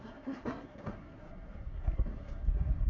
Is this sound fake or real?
fake